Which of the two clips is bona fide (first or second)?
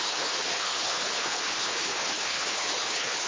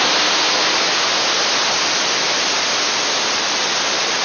second